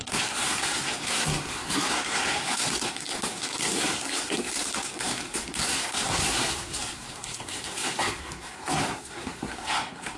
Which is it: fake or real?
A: fake